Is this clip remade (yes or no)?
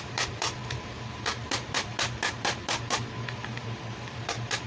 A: yes